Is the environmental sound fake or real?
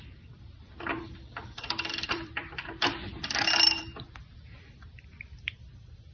fake